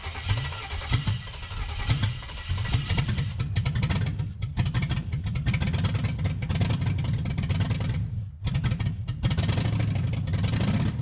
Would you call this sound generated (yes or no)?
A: no